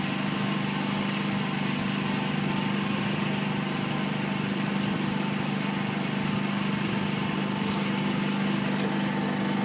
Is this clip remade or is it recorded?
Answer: recorded